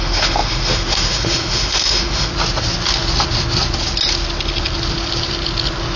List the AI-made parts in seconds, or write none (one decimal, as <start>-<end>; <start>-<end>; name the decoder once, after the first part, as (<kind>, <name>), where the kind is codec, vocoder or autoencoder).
0.0-2.3 (autoencoder, DAC-VAE)